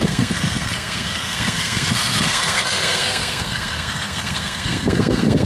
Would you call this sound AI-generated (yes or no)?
yes